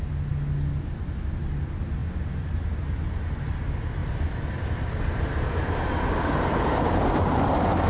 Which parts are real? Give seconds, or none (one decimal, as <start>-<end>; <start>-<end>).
0.0-2.0; 2.5-4.0